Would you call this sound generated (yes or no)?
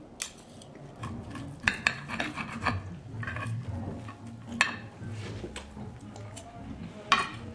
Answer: no